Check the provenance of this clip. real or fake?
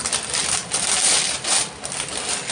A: real